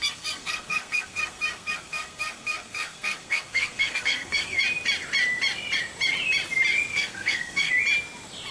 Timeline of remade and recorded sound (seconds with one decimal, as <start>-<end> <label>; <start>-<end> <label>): 0.0-4.6 remade; 4.6-6.9 recorded; 6.9-7.7 remade; 7.7-8.5 recorded